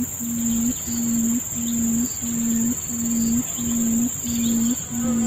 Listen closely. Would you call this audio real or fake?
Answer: real